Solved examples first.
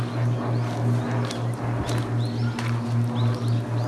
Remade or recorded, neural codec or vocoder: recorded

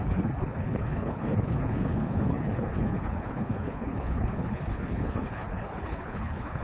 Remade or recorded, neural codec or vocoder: remade, codec, HILCodec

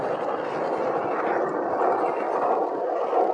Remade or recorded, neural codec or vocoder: recorded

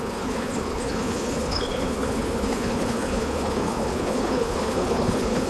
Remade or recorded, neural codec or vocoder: remade, codec, HILCodec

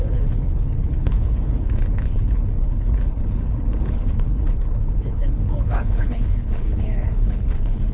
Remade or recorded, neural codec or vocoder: remade, codec, HILCodec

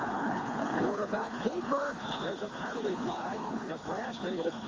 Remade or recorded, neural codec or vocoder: remade, codec, HILCodec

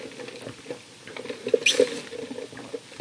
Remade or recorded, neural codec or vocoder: recorded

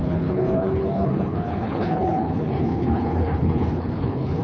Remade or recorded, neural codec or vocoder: remade, codec, HILCodec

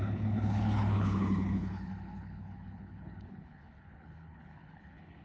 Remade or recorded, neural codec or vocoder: remade, codec, HILCodec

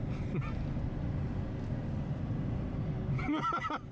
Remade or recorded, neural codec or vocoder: recorded